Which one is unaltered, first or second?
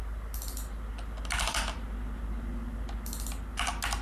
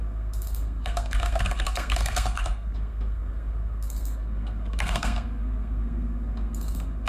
first